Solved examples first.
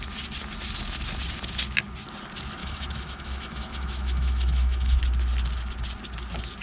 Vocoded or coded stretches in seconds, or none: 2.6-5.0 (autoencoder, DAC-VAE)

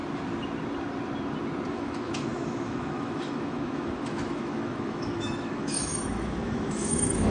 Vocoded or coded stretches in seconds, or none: 1.7-7.3 (autoencoder, DAC-VAE)

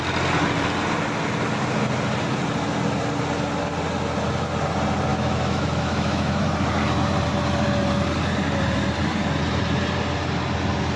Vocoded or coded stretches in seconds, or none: 5.1-6.4 (autoencoder, DAC-VAE)

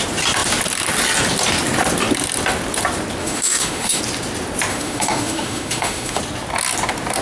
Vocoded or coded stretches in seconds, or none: 3.2-4.0 (autoencoder, DAC-VAE); 4.7-6.2

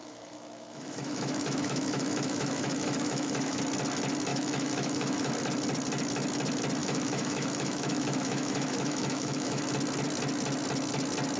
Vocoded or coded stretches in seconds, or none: 0.0-3.6 (autoencoder, DAC-VAE); 4.3-5.3; 6.8-9.6

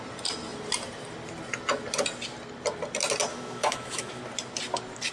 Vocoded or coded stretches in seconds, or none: 3.3-4.2 (autoencoder, DAC-VAE)

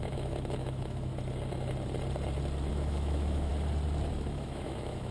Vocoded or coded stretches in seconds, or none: 0.0-1.1 (autoencoder, DAC-VAE); 2.7-3.5; 4.1-5.1

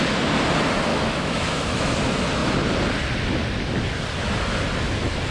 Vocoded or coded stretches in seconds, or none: 0.9-1.9 (autoencoder, DAC-VAE)